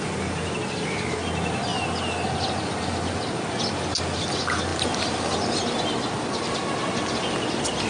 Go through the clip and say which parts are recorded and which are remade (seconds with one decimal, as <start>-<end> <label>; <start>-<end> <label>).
0.0-7.9 recorded